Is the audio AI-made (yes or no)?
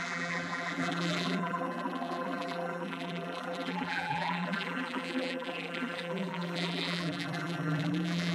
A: yes